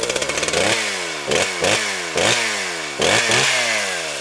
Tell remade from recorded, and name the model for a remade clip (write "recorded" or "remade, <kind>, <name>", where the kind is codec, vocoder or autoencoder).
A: recorded